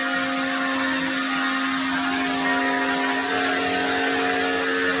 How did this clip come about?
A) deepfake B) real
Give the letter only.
B